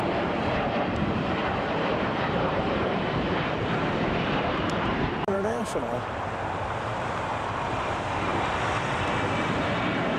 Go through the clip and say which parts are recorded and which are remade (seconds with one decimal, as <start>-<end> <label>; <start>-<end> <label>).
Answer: 0.0-8.3 remade; 8.3-9.5 recorded; 9.5-10.2 remade